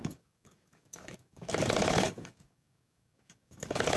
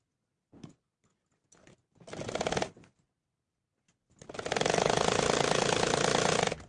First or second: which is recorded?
second